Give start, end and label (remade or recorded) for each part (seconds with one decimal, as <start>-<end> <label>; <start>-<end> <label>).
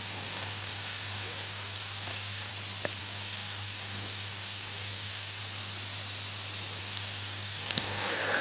0.0-2.5 remade; 2.5-3.0 recorded; 3.0-5.4 remade; 5.4-6.8 recorded; 6.8-8.4 remade